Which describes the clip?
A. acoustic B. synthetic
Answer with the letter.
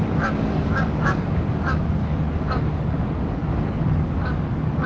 B